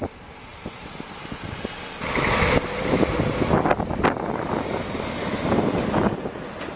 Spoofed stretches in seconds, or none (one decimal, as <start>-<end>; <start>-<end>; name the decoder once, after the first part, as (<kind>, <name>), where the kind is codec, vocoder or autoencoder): none